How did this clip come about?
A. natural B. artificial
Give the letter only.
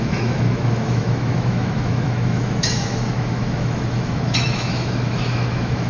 B